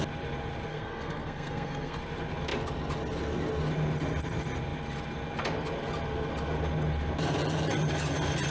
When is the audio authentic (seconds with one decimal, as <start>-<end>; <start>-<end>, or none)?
0.0-0.7; 2.0-8.5